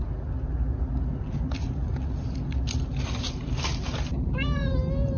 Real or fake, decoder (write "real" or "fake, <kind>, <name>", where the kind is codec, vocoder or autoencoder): real